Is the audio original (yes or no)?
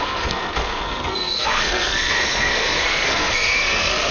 no